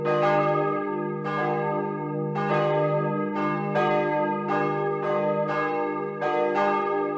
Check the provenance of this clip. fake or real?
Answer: real